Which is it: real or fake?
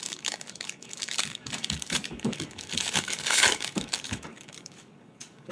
fake